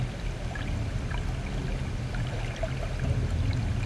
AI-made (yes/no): no